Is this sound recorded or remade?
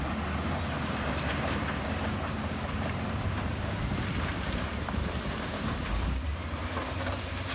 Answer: remade